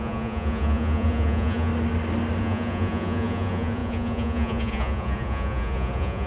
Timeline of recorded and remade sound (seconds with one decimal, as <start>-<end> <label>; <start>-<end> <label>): 0.0-1.7 remade; 1.7-2.4 recorded; 2.4-6.3 remade